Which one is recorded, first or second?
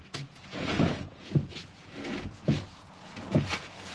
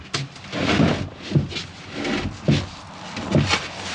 second